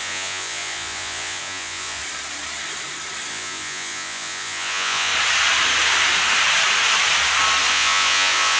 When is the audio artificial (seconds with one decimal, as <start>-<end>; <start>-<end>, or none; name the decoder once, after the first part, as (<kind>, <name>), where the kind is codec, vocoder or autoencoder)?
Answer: 0.0-2.0 (vocoder, Vocos); 3.3-5.1; 7.7-8.6